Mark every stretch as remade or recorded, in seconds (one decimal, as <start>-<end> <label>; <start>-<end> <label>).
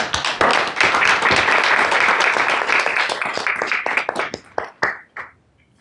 0.0-5.8 recorded